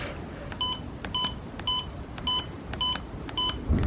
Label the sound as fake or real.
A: real